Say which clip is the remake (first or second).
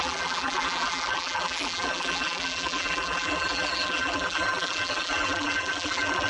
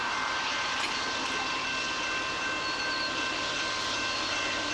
first